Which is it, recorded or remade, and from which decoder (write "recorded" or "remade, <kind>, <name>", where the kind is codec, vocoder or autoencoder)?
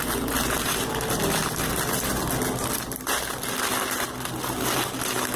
recorded